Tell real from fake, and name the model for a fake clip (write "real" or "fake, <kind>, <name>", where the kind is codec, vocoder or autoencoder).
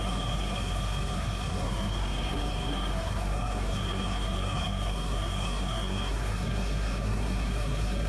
fake, codec, SNAC